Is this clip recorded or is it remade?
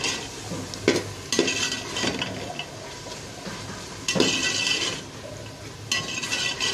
recorded